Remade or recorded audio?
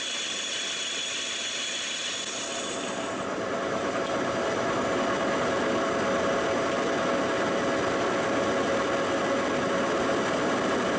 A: recorded